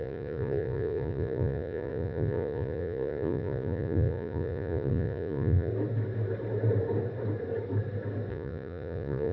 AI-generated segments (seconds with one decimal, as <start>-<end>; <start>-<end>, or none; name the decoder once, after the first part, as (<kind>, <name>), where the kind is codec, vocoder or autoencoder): 0.0-5.7 (vocoder, Vocos); 8.3-9.3

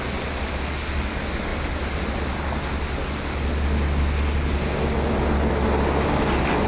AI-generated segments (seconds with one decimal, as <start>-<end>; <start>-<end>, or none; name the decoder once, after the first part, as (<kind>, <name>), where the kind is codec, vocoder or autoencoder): none

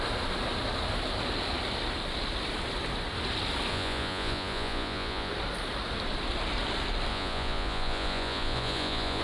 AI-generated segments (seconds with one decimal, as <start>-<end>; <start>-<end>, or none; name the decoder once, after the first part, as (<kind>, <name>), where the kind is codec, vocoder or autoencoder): 3.7-5.3 (vocoder, Vocos); 7.1-9.2

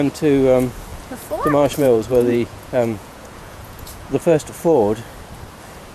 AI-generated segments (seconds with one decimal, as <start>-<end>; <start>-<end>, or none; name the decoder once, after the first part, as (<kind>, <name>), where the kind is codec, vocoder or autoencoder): 0.9-4.4 (vocoder, Vocos)

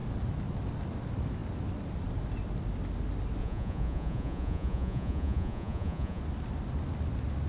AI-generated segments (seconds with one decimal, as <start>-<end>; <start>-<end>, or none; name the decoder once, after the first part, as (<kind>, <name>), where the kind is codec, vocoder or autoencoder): 3.4-6.2 (vocoder, Vocos)

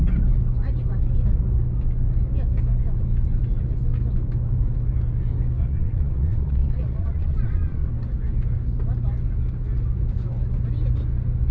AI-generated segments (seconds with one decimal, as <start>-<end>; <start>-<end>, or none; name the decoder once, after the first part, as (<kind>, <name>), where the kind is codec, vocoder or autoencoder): 5.6-7.9 (vocoder, Vocos)